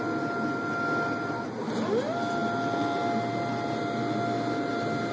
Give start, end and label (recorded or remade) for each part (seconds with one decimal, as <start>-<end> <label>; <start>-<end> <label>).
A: 0.0-5.1 recorded